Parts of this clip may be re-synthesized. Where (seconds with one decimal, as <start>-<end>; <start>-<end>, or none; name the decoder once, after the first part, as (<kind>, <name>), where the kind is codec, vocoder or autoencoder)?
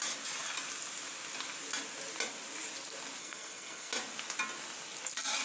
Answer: 3.2-3.9 (codec, SNAC)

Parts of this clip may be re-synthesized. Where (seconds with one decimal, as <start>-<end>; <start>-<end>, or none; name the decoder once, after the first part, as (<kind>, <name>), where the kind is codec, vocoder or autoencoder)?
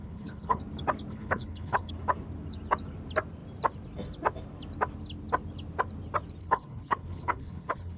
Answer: 0.0-0.6 (codec, HILCodec); 1.1-1.9; 6.4-8.0